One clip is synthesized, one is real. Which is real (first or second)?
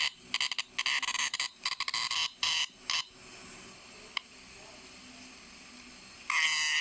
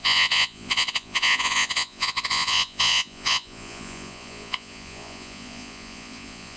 first